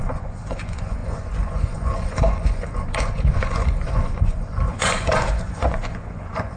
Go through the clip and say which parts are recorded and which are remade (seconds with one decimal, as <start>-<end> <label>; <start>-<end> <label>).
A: 0.0-6.6 remade